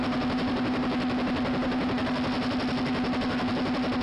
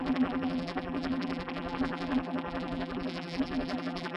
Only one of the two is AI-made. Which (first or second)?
second